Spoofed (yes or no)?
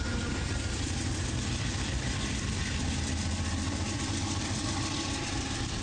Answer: yes